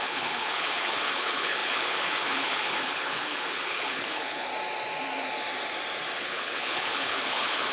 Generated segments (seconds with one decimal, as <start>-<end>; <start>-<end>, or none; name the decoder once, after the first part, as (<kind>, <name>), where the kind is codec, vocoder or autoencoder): 0.0-4.5 (codec, HILCodec); 6.2-7.7